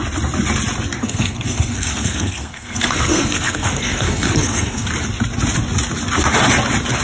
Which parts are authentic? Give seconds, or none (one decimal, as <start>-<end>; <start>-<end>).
0.0-1.0; 4.9-7.0